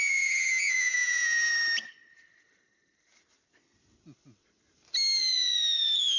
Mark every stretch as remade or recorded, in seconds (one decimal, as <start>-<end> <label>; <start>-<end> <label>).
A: 0.0-1.5 remade; 1.5-5.2 recorded; 5.2-6.2 remade